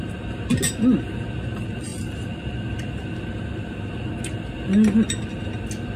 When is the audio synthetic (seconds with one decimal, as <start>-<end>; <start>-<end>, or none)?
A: none